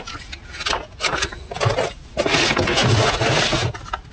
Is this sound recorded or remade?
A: recorded